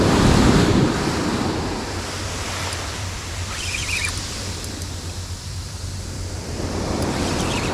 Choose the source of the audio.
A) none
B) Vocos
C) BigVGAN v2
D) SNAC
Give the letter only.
C